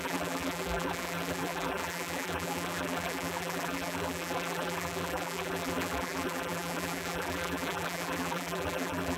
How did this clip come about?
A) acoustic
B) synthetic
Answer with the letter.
B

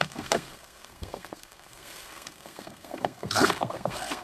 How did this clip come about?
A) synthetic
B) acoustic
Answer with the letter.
A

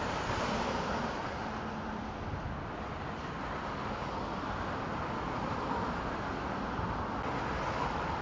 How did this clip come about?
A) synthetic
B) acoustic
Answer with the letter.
B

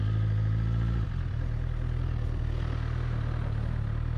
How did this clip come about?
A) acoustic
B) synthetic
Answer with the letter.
A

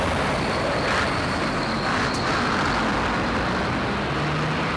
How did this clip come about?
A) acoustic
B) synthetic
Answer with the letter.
A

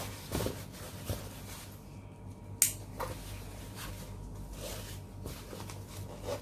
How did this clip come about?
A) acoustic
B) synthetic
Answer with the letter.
A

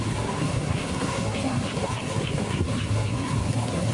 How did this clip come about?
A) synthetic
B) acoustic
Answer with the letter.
A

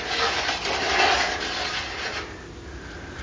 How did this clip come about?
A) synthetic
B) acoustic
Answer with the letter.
B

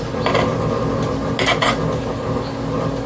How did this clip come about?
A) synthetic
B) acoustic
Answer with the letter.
B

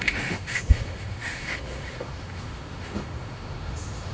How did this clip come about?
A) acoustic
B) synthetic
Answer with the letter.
B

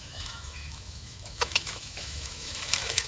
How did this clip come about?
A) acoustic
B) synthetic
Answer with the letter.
B